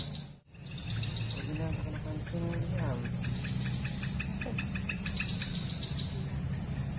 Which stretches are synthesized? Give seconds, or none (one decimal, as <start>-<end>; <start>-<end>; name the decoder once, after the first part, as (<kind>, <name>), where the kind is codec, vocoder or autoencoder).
4.3-5.7 (vocoder, BigVGAN v2)